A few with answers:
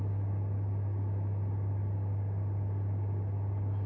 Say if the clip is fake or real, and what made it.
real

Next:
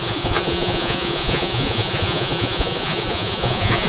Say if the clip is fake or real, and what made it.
fake, vocoder, Vocos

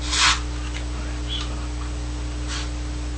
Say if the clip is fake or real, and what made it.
real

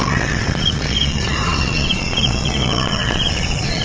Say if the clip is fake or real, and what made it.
fake, vocoder, Vocos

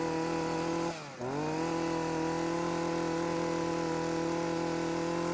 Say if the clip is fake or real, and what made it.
real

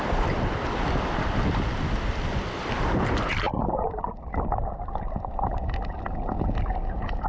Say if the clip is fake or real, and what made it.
real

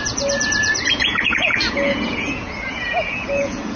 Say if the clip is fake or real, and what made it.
fake, vocoder, Vocos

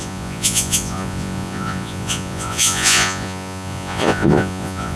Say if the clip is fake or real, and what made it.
fake, vocoder, Vocos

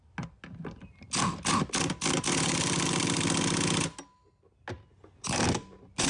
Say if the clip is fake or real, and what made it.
real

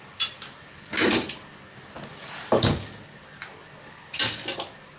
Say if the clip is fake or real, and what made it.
real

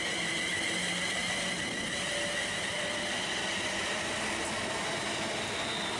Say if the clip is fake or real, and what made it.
real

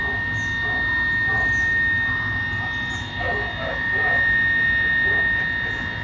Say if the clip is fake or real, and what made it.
real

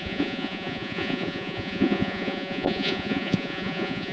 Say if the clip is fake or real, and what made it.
fake, vocoder, Vocos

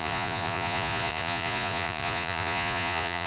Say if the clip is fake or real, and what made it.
fake, vocoder, Vocos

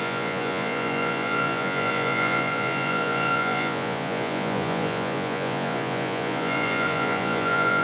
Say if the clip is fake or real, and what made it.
fake, vocoder, Vocos